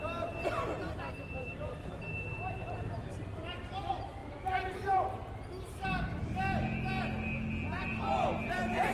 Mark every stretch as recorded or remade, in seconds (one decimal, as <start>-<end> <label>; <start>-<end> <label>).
0.0-5.2 remade; 5.2-7.8 recorded; 7.8-8.9 remade